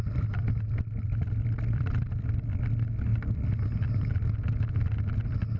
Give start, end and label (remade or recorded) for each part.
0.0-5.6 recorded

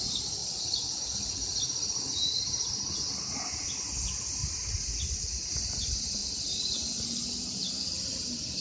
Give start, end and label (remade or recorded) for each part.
0.0-0.4 recorded; 0.4-2.4 remade; 2.4-8.6 recorded